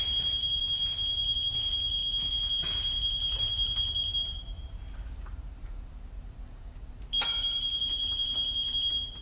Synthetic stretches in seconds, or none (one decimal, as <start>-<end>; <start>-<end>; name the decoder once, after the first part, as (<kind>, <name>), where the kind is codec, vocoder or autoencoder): 0.0-2.0 (vocoder, BigVGAN v2); 2.6-9.2